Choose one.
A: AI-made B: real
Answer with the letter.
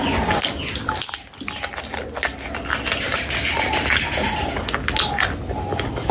B